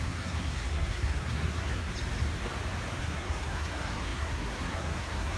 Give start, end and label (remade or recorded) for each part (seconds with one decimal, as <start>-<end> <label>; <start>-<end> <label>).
0.0-1.9 remade; 1.9-3.0 recorded; 3.0-5.4 remade